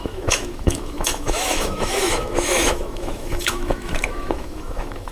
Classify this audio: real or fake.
fake